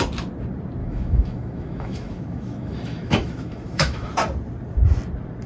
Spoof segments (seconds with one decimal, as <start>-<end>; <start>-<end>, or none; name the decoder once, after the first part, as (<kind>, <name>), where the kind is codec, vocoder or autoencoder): 0.8-4.1 (autoencoder, DAC-VAE)